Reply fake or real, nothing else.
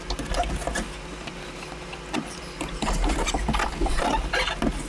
real